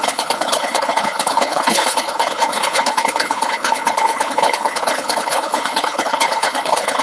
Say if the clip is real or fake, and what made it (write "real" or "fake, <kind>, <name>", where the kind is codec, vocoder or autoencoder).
fake, codec, HILCodec